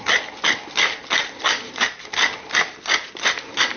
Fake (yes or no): no